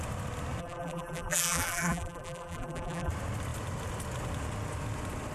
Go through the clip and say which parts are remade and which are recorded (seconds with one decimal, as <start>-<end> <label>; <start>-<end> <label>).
0.0-0.6 recorded; 0.6-3.1 remade; 3.1-5.3 recorded